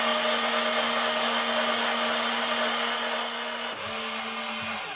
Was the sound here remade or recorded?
recorded